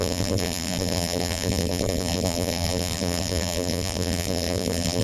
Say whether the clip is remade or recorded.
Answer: remade